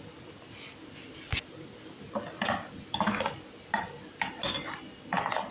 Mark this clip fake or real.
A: real